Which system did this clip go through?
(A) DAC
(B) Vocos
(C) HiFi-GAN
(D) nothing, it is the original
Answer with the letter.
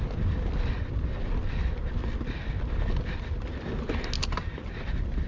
D